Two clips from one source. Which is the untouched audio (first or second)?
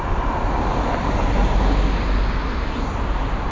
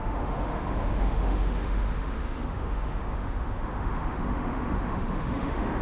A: first